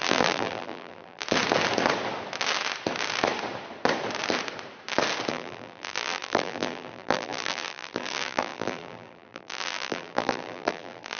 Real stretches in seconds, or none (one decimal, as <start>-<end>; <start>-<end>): 1.2-5.3

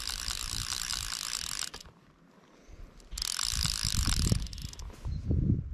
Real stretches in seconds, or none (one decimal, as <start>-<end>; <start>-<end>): 0.0-5.7